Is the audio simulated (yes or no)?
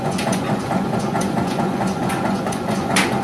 yes